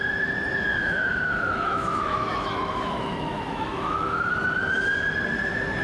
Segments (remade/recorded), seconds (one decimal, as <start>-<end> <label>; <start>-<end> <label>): 0.0-0.8 recorded; 0.8-4.3 remade; 4.3-5.8 recorded